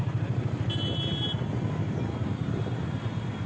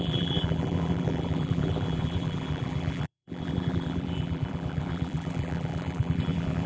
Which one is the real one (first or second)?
first